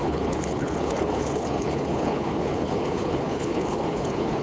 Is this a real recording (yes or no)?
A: no